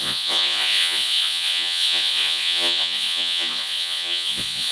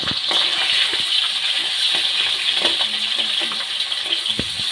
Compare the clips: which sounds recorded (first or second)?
second